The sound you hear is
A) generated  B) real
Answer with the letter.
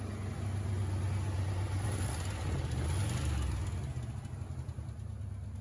B